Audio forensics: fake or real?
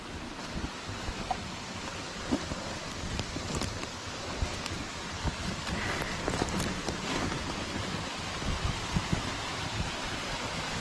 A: real